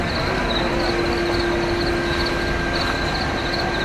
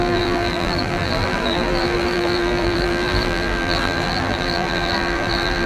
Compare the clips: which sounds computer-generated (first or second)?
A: second